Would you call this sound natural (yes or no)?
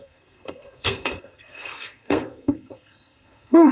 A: no